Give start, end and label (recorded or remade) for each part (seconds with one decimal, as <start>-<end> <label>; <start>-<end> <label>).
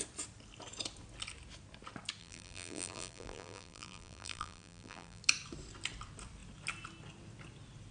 0.0-2.2 recorded; 2.2-5.2 remade; 5.2-7.9 recorded